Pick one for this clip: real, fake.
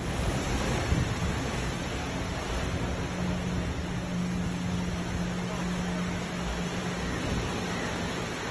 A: real